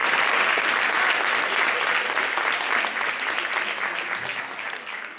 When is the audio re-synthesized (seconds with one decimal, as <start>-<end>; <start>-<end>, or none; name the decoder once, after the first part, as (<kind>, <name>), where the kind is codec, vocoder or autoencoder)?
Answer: 4.3-5.2 (codec, DAC)